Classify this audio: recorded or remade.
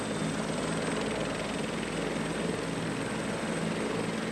recorded